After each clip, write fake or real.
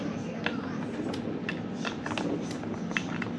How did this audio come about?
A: real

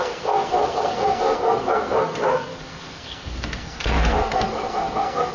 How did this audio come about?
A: fake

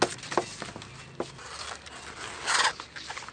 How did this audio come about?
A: real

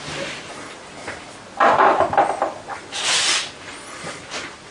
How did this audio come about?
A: real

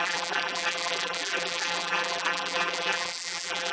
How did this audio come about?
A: fake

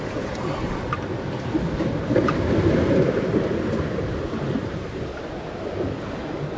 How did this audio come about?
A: real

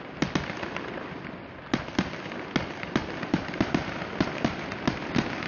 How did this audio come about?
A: real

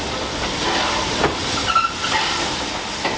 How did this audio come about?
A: real